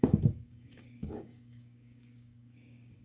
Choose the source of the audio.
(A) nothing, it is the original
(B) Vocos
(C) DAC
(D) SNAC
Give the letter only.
C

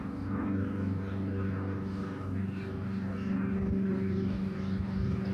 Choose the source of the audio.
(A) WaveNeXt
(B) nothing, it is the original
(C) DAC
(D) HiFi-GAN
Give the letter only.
C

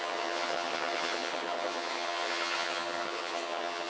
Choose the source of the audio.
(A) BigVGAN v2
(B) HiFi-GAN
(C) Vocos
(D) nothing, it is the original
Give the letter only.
B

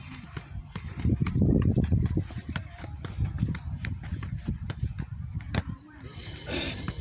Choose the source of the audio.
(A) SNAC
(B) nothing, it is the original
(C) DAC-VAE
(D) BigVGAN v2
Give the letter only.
D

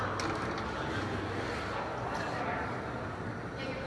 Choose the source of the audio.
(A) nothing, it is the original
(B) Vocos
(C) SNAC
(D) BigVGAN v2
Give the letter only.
A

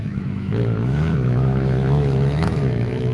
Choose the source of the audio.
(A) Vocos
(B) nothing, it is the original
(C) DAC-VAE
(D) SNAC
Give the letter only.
C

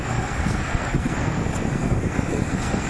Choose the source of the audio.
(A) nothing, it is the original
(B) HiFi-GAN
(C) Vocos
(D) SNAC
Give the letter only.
D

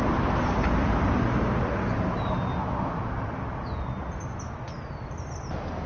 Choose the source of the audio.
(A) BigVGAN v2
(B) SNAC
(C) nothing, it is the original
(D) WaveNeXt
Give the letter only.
C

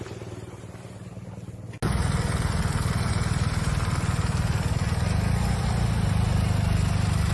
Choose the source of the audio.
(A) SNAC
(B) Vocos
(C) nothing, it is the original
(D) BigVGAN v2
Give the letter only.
C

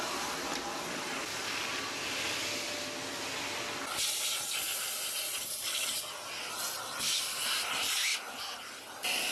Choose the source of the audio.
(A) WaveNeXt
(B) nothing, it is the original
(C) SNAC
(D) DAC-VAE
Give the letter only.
B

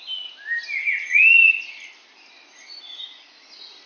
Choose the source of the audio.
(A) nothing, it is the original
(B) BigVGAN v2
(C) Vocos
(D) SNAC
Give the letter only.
A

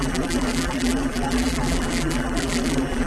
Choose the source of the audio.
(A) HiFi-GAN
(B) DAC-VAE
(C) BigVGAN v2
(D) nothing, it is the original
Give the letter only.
C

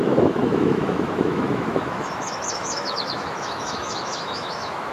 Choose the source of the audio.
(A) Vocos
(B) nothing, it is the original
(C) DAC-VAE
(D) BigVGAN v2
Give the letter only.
C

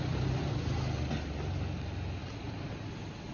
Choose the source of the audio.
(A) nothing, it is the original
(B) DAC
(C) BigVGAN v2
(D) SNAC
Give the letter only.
A